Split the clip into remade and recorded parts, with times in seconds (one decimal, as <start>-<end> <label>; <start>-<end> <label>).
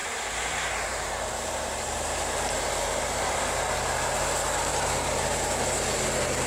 0.0-3.4 remade; 3.4-4.7 recorded; 4.7-5.2 remade; 5.2-6.5 recorded